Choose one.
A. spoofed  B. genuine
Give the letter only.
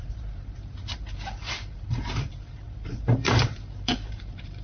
A